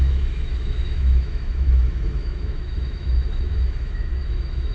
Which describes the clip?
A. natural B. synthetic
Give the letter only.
B